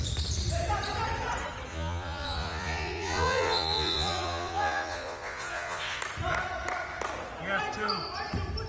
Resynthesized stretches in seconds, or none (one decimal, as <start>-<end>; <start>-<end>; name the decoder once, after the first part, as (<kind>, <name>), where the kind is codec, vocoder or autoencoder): 1.7-6.0 (vocoder, Vocos)